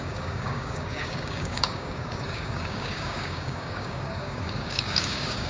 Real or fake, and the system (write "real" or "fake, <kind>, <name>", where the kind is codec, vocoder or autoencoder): fake, codec, DAC